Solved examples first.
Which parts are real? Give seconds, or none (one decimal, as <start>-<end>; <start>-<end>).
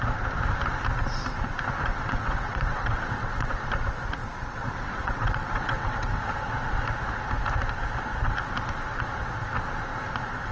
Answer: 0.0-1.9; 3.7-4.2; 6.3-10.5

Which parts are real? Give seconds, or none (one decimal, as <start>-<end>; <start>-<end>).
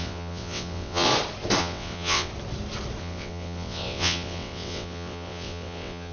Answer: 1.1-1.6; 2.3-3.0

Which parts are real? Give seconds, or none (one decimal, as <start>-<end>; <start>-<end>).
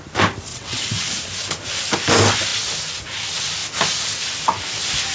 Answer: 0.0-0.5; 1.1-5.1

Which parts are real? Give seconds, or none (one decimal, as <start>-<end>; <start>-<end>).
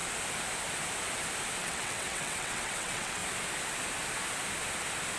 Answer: 0.0-1.6; 3.2-5.2